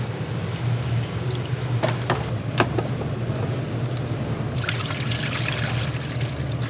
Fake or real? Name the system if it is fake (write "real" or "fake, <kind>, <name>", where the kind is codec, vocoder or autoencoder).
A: real